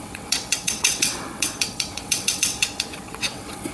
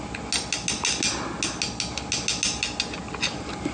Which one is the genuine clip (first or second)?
second